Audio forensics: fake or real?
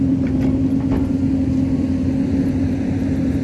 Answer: real